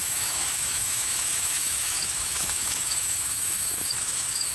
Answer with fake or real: fake